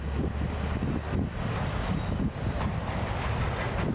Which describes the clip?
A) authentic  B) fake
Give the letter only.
A